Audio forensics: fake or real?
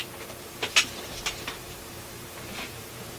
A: fake